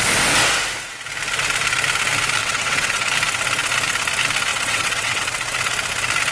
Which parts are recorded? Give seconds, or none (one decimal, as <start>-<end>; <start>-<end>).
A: 0.0-2.4; 3.1-4.5; 5.2-6.3